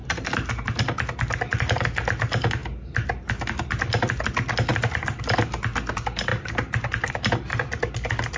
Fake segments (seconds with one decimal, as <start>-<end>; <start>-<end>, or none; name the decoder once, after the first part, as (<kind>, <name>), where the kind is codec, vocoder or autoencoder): none